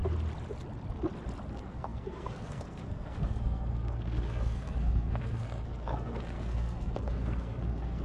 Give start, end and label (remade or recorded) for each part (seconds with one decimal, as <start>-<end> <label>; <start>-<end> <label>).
0.0-1.5 recorded; 1.5-8.0 remade